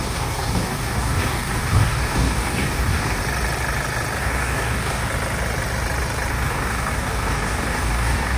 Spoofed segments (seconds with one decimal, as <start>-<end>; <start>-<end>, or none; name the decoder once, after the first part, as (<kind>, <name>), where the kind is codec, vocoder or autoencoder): 0.0-3.2 (codec, DAC); 4.2-5.1; 6.3-8.4